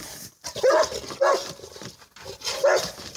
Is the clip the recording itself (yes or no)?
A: yes